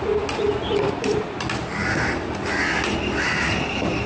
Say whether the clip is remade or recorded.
recorded